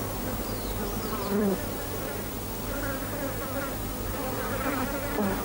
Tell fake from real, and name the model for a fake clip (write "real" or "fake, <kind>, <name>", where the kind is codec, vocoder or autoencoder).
real